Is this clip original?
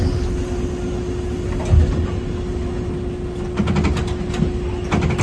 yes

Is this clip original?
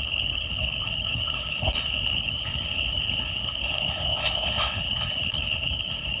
no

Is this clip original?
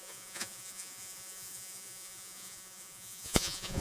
no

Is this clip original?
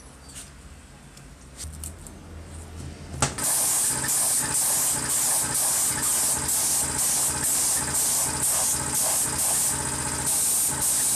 yes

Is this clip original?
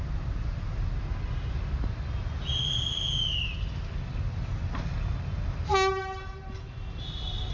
yes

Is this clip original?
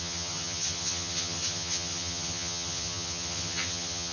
no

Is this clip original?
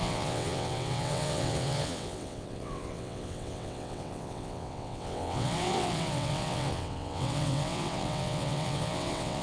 no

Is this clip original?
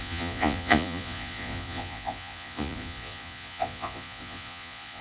no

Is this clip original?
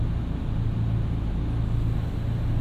yes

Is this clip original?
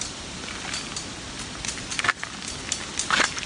yes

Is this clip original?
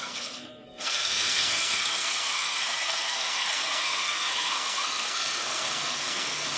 no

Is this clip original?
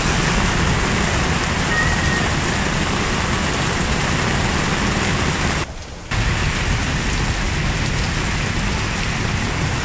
yes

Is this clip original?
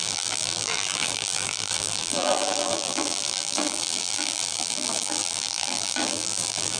no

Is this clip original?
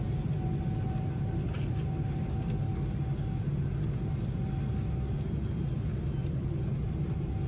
yes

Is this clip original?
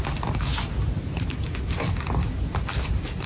yes